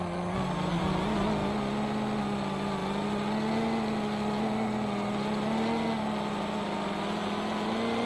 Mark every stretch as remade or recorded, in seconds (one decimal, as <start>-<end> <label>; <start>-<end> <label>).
0.0-8.1 recorded